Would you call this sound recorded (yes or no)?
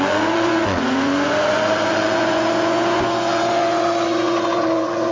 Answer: no